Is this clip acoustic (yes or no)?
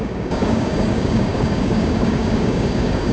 no